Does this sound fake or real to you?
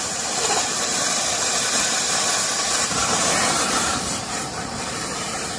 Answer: fake